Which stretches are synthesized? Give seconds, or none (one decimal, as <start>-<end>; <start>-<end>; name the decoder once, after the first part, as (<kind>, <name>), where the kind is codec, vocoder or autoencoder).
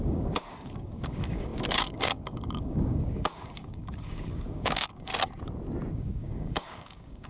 0.0-5.1 (codec, DAC); 5.9-7.3